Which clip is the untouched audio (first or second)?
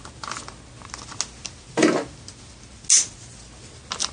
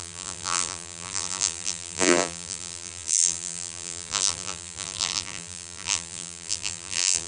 first